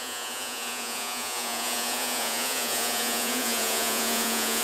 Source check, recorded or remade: remade